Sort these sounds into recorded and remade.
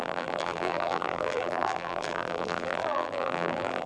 remade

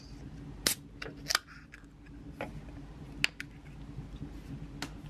recorded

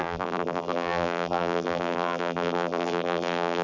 remade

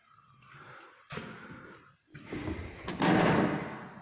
recorded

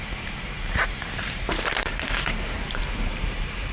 remade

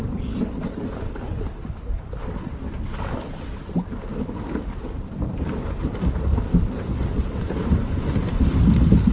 recorded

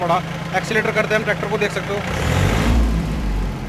remade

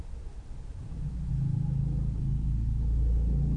recorded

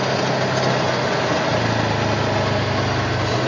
recorded